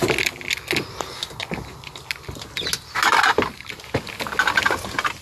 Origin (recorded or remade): recorded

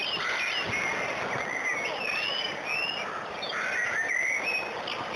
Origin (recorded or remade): recorded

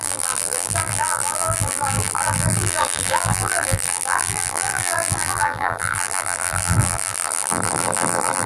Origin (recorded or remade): remade